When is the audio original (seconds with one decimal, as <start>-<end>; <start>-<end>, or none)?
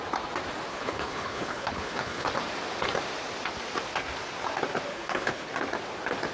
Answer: 0.0-0.7; 2.3-4.9; 5.5-6.3